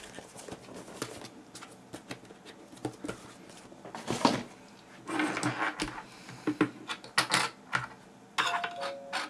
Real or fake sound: real